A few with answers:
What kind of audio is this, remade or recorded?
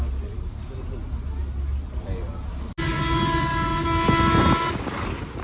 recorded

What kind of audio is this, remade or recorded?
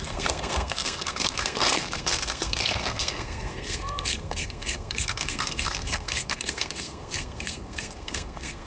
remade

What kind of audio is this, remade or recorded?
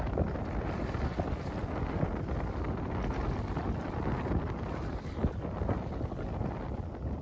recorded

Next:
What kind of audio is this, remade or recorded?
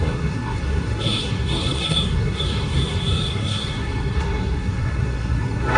remade